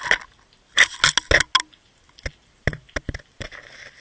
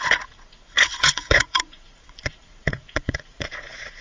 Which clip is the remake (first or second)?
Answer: second